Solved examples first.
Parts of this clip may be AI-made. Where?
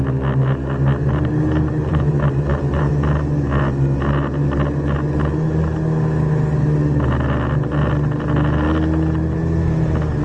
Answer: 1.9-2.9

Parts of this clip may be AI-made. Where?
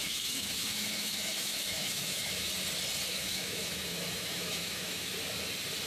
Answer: 0.0-2.5; 3.1-5.1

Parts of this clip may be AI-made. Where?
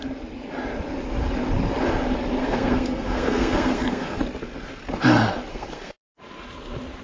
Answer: 2.4-4.2; 5.5-6.1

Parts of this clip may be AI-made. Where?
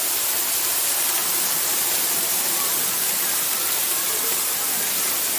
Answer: 1.2-4.4